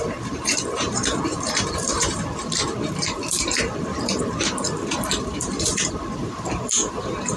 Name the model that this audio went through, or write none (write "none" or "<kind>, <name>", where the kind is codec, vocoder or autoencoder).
vocoder, BigVGAN v2